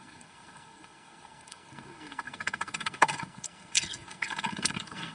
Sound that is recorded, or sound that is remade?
remade